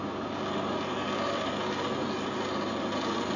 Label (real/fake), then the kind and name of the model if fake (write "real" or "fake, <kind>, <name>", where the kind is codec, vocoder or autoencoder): real